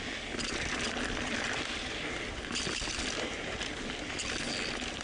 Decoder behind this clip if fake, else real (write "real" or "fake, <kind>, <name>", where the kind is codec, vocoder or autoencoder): real